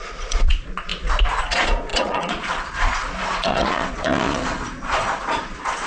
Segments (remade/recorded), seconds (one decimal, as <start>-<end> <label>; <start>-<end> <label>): 0.0-0.9 remade; 0.9-1.4 recorded; 1.4-5.9 remade